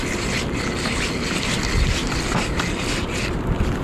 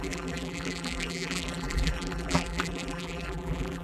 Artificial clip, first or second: second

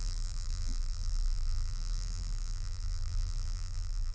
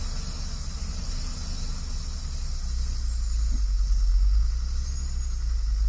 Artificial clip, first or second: first